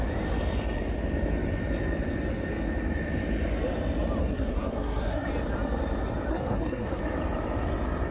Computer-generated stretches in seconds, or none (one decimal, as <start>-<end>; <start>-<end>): 4.2-5.3; 6.3-7.0